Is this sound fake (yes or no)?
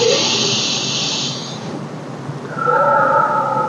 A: no